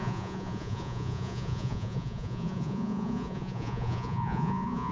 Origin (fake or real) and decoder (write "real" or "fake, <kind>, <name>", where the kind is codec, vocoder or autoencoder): fake, vocoder, Vocos